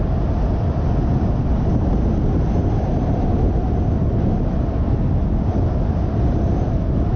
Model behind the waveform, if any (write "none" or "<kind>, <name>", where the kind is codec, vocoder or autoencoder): none